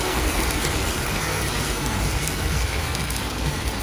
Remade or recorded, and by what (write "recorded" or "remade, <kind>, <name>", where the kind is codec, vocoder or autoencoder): remade, codec, SNAC